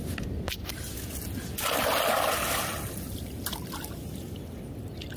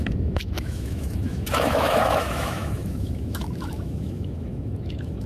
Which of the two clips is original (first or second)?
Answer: first